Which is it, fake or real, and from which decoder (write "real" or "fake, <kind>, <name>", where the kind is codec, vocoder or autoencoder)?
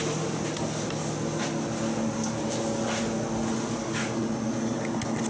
real